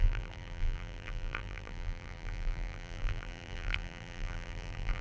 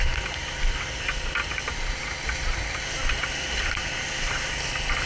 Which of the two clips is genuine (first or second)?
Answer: second